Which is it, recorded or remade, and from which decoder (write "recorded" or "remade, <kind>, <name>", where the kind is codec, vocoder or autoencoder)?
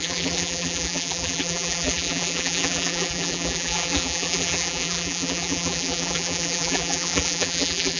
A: remade, vocoder, BigVGAN v2